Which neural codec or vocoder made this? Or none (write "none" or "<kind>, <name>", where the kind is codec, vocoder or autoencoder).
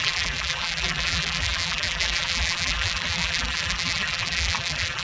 vocoder, BigVGAN v2